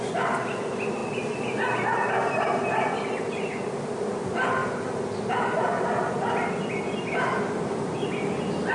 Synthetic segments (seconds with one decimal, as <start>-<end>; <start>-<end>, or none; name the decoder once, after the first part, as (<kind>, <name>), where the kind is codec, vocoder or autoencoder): none